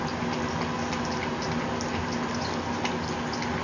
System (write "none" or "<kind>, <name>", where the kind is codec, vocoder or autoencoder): none